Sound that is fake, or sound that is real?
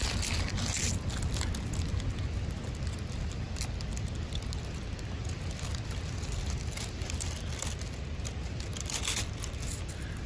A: real